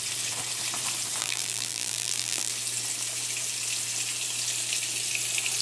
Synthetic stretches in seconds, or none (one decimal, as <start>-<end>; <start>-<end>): 1.2-2.5